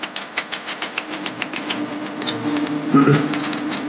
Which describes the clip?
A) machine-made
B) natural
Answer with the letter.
B